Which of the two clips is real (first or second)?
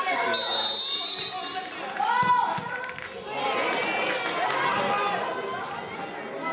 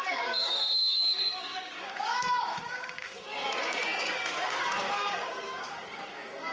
first